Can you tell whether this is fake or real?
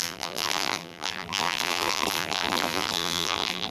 fake